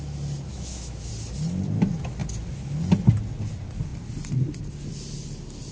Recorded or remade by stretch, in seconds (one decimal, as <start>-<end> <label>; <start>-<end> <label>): 0.0-0.5 recorded; 0.5-1.1 remade; 1.1-5.7 recorded